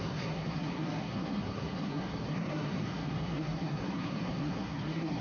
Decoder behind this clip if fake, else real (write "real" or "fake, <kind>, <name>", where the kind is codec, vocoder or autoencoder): fake, codec, SNAC